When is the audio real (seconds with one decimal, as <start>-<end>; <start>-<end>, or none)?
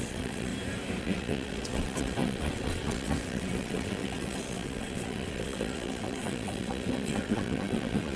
0.5-1.0